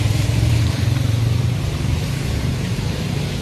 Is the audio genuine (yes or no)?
no